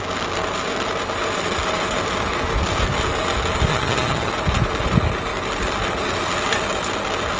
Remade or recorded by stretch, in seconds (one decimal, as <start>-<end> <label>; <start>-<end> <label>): 0.0-3.7 recorded; 3.7-4.3 remade; 4.3-7.4 recorded